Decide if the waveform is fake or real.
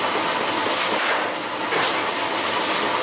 real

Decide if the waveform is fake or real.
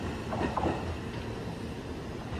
real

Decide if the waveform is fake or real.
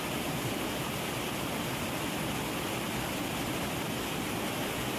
real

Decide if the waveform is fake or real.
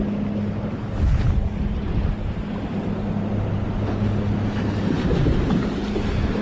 real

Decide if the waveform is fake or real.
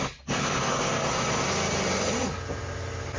real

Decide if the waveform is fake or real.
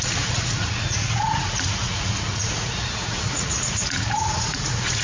fake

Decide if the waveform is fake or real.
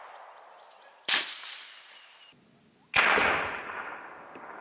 real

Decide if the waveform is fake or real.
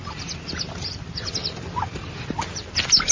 real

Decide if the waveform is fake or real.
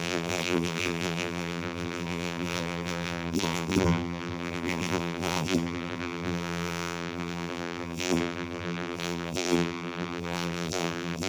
fake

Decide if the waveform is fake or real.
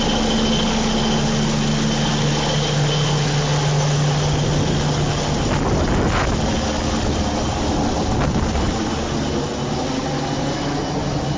real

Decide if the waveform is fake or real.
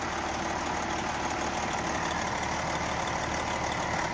real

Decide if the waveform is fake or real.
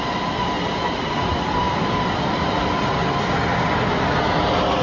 real